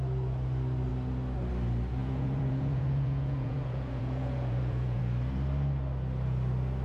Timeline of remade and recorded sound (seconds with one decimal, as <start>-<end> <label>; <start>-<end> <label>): 0.0-2.0 recorded; 2.0-5.0 remade; 5.0-6.8 recorded